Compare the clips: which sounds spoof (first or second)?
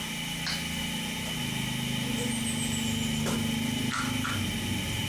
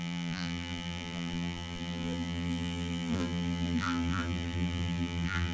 second